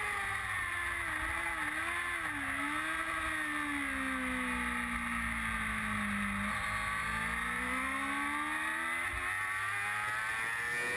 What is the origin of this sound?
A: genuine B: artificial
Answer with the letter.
A